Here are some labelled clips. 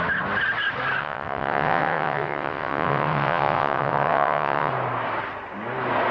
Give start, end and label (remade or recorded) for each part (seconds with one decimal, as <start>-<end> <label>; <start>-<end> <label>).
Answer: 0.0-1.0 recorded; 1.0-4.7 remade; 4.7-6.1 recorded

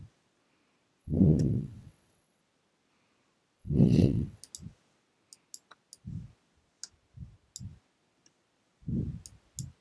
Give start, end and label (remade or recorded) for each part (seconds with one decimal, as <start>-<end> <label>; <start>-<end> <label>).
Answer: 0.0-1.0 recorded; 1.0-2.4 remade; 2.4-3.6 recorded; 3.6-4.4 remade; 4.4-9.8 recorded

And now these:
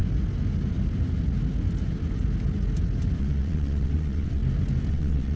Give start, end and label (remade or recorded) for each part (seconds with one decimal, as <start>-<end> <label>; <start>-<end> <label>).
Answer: 0.0-3.2 recorded; 3.2-4.4 remade; 4.4-4.9 recorded; 4.9-5.4 remade

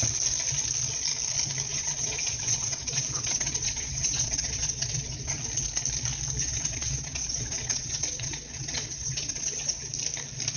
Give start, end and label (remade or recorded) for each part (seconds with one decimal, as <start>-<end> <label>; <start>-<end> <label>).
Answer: 0.0-1.7 recorded; 1.7-5.4 remade; 5.4-6.4 recorded; 6.4-9.9 remade; 9.9-10.6 recorded